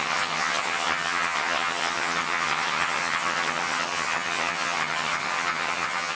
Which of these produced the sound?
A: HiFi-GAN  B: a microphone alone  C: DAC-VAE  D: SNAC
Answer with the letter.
A